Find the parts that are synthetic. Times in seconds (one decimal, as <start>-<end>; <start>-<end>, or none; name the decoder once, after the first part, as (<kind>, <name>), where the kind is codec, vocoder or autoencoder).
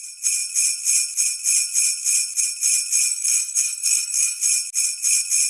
3.1-4.4 (codec, SNAC)